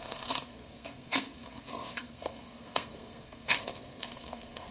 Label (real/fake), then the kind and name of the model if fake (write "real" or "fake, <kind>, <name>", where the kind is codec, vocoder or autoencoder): fake, codec, SNAC